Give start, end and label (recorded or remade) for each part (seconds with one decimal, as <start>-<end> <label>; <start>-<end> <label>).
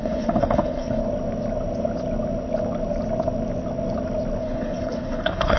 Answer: 0.0-1.0 remade; 1.0-4.4 recorded; 4.4-5.6 remade